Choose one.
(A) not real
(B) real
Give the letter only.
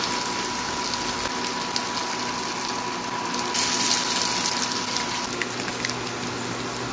B